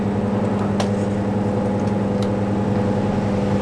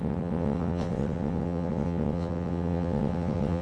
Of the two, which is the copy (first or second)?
second